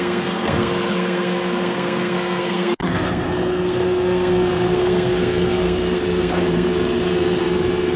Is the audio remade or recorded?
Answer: remade